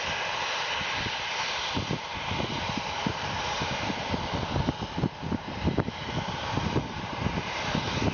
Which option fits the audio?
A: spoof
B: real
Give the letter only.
B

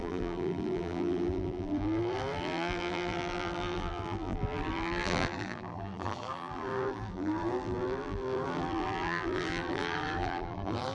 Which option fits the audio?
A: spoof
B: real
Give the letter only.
A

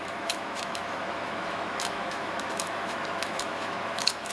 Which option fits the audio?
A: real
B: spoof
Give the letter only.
B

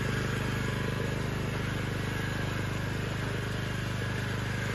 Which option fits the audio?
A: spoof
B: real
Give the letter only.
B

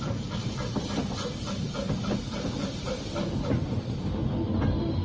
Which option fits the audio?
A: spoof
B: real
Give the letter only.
B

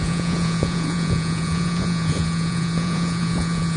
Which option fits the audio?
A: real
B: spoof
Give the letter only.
B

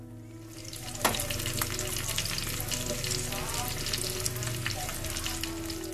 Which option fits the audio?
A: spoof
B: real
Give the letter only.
B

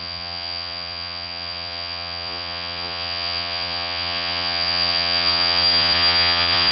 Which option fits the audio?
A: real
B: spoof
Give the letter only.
B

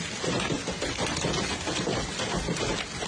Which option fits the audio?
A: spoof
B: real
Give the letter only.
B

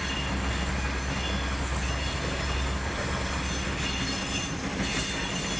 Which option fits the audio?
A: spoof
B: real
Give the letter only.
B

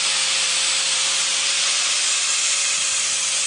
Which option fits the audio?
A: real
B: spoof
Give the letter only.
B